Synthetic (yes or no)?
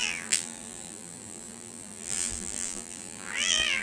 yes